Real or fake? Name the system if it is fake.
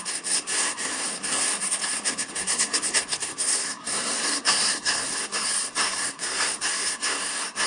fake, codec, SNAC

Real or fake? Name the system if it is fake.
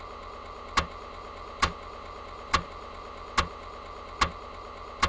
real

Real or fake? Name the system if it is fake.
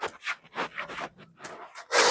real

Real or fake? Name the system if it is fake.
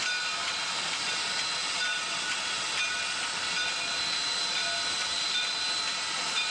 real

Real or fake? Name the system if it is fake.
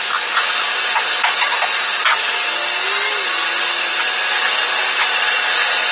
real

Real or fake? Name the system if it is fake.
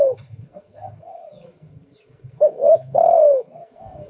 fake, codec, SNAC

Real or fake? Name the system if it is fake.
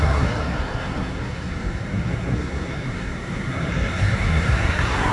fake, codec, SNAC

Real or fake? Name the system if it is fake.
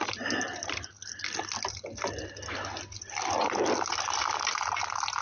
real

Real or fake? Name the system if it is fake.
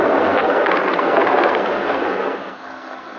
fake, codec, SNAC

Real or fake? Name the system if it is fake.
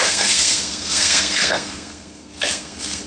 fake, codec, SNAC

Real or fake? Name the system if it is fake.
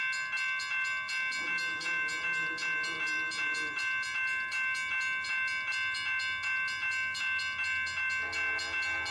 real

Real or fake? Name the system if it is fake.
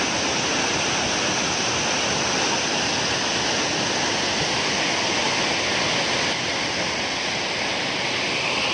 real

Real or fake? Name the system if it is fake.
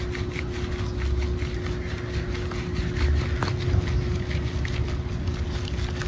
real